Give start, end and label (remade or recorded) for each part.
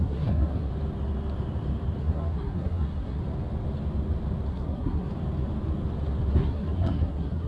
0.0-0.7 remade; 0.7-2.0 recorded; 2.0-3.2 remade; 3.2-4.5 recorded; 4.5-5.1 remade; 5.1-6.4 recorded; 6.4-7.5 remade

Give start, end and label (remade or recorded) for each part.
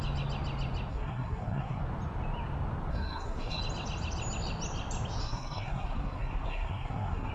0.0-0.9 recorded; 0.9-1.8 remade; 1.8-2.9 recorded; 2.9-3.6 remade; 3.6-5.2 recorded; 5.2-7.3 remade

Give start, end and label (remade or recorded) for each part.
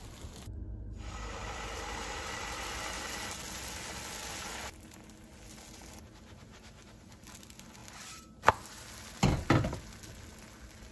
0.0-1.4 recorded; 1.4-2.7 remade; 2.7-7.8 recorded; 7.8-8.5 remade; 8.5-10.9 recorded